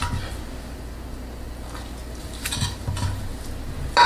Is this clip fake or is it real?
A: real